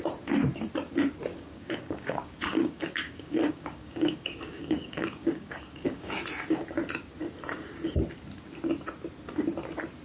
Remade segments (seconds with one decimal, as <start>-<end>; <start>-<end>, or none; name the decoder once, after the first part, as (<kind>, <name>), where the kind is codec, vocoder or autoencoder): 1.3-6.1 (codec, DAC)